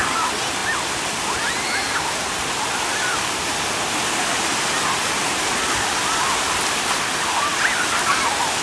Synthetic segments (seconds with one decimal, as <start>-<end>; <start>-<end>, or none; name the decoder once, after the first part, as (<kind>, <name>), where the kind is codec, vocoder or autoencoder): none

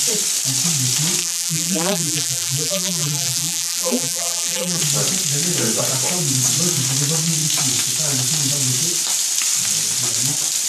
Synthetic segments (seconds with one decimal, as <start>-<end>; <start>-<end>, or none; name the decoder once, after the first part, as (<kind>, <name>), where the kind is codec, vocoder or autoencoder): 1.2-4.8 (vocoder, BigVGAN v2)

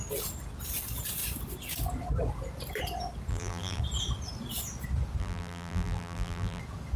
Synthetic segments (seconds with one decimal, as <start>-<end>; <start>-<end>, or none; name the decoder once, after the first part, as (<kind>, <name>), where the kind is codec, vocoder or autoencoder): 3.3-3.8 (vocoder, BigVGAN v2); 5.2-6.6

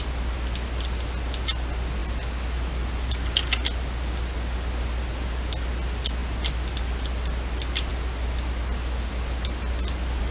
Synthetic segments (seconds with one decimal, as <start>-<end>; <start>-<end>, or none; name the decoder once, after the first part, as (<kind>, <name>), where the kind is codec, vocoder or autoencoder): none

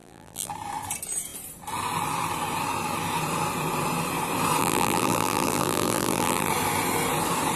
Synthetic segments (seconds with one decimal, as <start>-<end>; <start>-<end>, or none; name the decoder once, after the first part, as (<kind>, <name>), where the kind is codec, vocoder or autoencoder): 0.0-0.5 (vocoder, BigVGAN v2); 4.6-6.5